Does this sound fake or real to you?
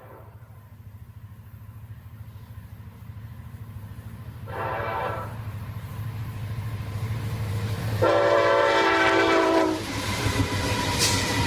fake